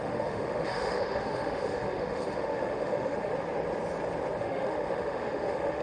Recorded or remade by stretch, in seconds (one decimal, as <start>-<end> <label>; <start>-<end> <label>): 0.0-3.3 remade; 3.3-4.4 recorded; 4.4-5.8 remade